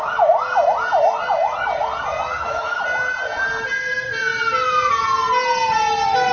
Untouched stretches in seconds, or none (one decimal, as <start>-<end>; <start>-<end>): 0.0-2.3; 2.8-6.3

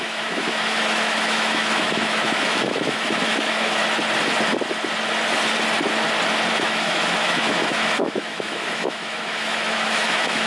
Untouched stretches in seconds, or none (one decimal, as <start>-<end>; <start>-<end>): 3.8-6.5

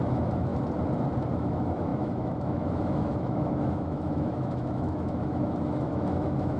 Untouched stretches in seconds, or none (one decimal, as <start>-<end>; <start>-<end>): 0.5-1.4

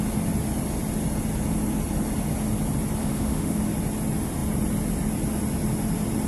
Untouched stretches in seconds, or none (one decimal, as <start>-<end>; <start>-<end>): 0.0-3.0; 3.6-6.3